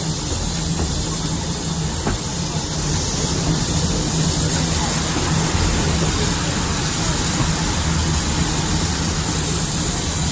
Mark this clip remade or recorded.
recorded